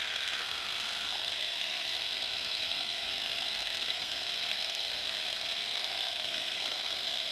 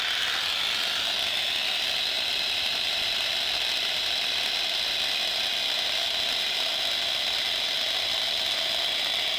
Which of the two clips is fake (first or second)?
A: first